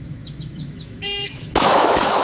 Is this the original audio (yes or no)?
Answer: no